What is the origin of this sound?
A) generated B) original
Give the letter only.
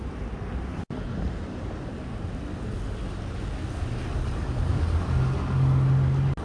B